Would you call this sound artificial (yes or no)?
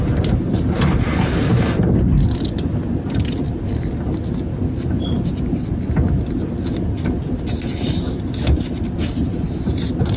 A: no